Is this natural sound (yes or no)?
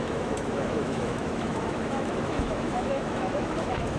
no